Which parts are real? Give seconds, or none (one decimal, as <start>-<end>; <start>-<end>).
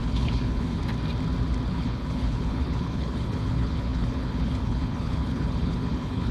0.8-1.7